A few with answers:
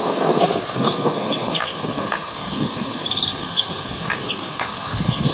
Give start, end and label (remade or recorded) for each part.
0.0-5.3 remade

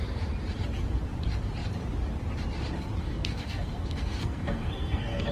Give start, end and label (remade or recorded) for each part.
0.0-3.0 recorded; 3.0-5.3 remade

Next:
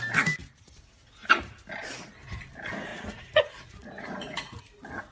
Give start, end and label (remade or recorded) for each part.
0.0-2.9 recorded; 2.9-4.6 remade; 4.6-5.1 recorded